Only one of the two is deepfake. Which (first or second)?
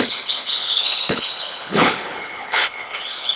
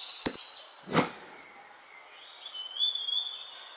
first